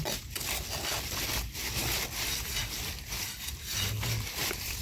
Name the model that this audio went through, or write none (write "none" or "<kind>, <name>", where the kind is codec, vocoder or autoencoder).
none